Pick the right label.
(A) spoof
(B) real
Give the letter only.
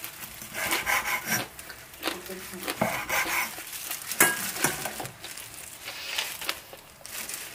B